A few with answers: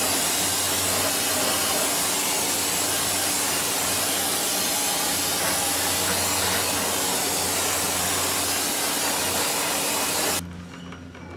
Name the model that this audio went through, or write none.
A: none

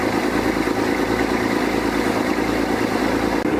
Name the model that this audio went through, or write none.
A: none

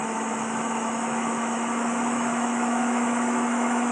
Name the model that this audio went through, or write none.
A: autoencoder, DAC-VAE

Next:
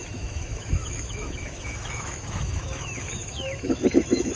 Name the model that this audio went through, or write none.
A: autoencoder, DAC-VAE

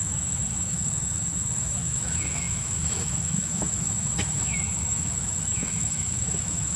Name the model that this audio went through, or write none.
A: autoencoder, DAC-VAE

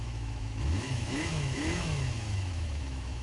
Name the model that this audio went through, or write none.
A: autoencoder, DAC-VAE